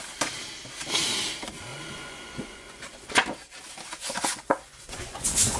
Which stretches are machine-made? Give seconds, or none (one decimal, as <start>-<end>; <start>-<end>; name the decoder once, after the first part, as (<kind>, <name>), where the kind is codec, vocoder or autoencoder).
1.7-3.1 (vocoder, Vocos); 4.0-5.6